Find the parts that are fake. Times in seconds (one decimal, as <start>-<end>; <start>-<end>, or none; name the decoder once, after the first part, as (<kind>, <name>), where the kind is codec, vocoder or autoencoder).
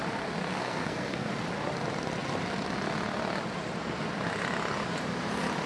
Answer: 0.6-1.3 (codec, SNAC)